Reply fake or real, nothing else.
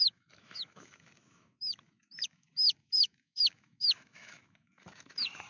fake